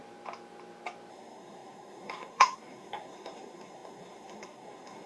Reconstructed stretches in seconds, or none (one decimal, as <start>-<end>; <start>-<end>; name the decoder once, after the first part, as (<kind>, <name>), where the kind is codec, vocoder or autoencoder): 1.1-5.1 (codec, SNAC)